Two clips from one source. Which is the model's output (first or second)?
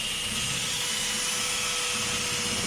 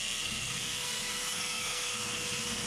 second